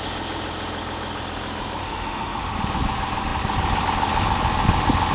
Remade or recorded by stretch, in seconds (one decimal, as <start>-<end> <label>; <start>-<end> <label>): 0.0-1.8 recorded; 1.8-2.5 remade; 2.5-5.1 recorded